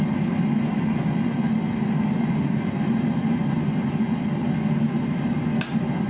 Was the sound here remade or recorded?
recorded